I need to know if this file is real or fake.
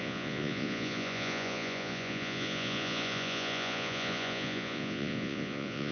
fake